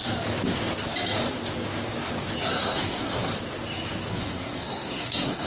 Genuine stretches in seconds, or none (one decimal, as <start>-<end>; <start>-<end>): 0.0-2.5; 3.3-4.1